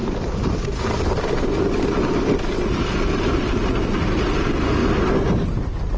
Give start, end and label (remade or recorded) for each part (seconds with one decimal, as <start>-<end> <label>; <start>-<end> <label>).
0.0-6.0 recorded